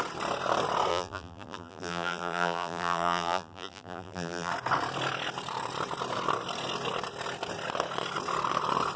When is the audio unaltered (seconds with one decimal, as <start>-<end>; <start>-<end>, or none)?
0.0-0.9; 4.5-9.0